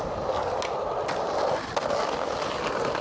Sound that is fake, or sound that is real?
real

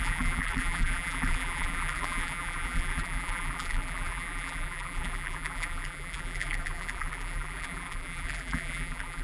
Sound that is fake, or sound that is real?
fake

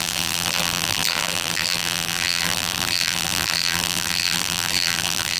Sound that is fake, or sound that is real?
fake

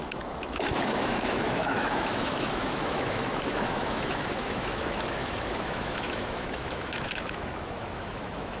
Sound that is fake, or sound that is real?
fake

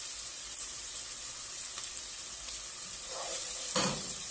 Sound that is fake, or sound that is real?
real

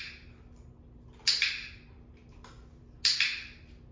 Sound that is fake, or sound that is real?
real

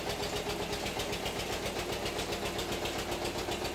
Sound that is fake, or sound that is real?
real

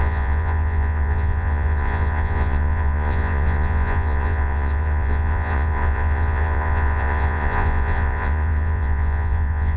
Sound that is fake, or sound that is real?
fake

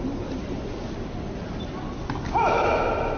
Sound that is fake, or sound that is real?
real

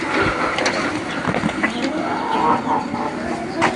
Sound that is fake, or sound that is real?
real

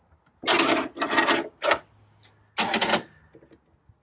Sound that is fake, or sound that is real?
real